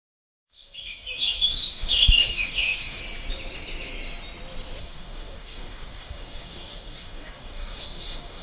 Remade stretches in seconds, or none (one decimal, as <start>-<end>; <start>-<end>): 0.0-3.0; 4.8-8.4